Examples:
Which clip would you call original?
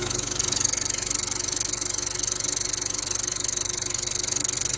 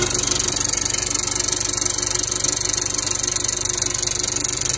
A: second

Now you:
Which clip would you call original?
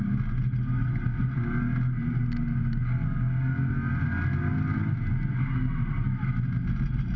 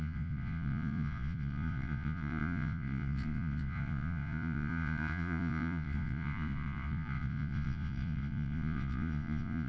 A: first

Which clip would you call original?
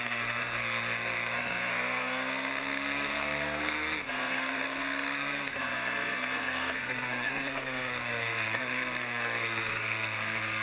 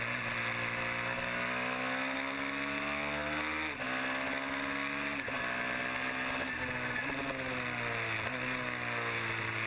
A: second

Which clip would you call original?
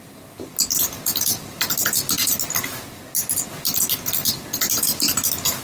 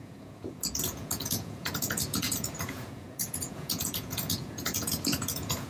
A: first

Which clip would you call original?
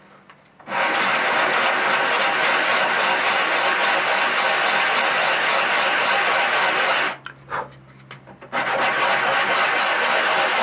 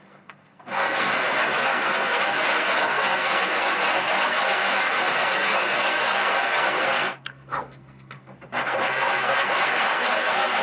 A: first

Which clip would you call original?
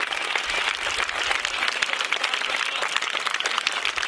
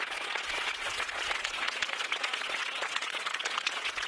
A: first